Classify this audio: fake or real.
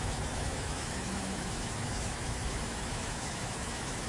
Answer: fake